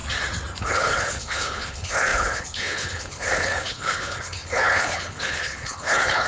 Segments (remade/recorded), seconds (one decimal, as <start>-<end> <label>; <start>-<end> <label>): 0.0-0.6 recorded; 0.6-6.3 remade